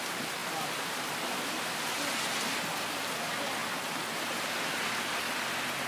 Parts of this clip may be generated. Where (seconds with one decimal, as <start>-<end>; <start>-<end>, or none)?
3.6-5.2